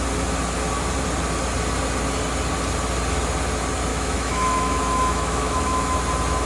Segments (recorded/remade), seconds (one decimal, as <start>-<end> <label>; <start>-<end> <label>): 0.0-3.9 recorded; 3.9-6.0 remade; 6.0-6.5 recorded

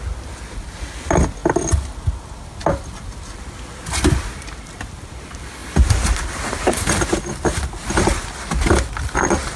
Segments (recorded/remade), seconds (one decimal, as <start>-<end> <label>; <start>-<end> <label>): 0.0-9.6 recorded

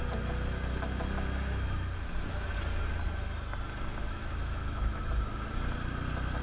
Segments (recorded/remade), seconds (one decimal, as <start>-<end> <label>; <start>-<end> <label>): 0.0-3.9 recorded; 3.9-5.0 remade; 5.0-6.4 recorded

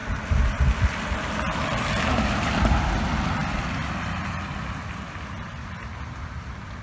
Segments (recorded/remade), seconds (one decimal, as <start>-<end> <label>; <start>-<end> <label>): 0.0-6.8 recorded

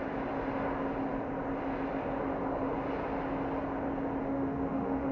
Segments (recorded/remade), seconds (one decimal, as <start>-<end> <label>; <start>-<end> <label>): 0.0-4.2 recorded; 4.2-5.1 remade

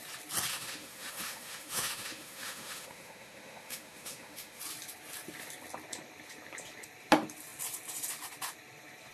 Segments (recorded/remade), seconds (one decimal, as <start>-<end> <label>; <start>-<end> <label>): 0.0-0.5 recorded; 0.5-4.6 remade; 4.6-9.1 recorded